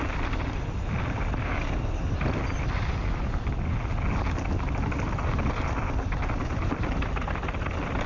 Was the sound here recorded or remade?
recorded